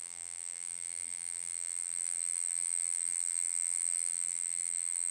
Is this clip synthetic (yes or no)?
yes